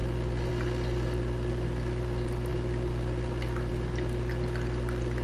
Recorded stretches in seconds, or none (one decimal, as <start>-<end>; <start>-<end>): 0.0-5.2